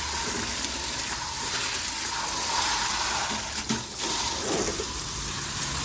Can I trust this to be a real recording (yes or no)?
yes